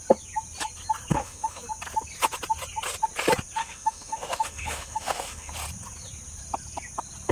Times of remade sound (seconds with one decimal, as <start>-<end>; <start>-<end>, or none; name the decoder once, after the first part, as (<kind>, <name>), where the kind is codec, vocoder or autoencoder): 1.1-1.6 (autoencoder, DAC-VAE); 3.6-5.5